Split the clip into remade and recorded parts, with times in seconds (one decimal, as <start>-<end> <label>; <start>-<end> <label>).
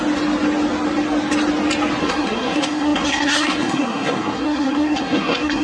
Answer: 0.0-2.0 recorded; 2.0-5.6 remade